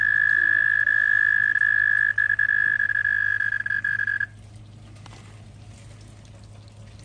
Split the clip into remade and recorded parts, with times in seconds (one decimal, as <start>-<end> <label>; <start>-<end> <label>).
0.0-7.0 recorded